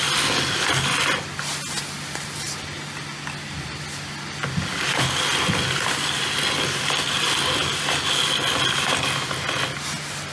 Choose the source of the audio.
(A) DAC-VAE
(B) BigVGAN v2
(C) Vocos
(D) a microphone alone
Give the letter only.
D